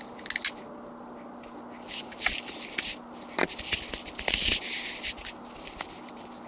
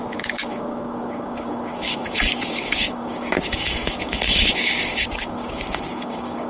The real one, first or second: first